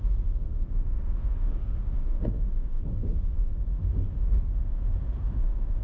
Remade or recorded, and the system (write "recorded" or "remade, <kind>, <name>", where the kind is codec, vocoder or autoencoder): remade, autoencoder, DAC-VAE